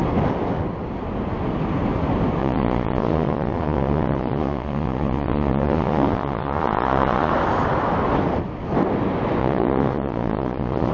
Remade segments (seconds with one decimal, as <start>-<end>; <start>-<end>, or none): 2.4-7.3; 9.4-10.9